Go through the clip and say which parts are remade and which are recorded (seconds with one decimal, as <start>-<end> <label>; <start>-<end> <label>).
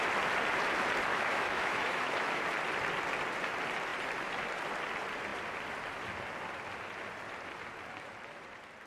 0.0-1.1 recorded; 1.1-2.4 remade; 2.4-8.9 recorded